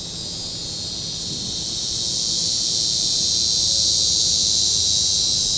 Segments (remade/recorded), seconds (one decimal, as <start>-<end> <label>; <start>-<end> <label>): 0.0-5.6 recorded